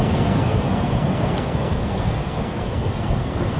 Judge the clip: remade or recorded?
remade